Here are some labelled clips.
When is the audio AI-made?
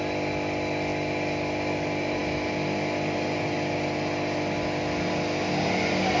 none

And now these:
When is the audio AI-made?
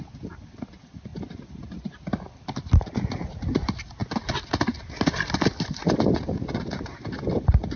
none